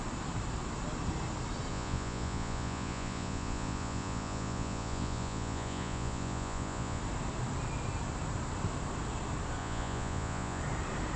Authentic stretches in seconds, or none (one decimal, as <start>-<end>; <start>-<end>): 0.0-1.7; 7.0-9.6; 10.6-11.2